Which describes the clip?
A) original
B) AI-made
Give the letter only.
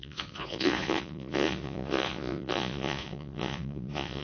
B